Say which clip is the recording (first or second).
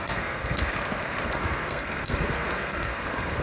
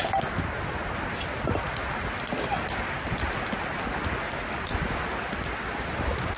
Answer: second